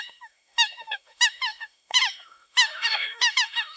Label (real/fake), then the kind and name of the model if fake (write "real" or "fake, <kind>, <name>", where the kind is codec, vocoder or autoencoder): fake, autoencoder, DAC-VAE